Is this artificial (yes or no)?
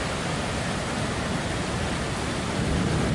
no